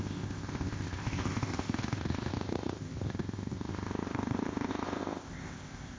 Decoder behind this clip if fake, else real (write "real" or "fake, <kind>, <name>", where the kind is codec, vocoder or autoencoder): fake, codec, ZipCodec